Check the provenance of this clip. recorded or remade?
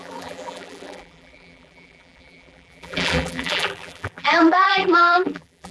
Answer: remade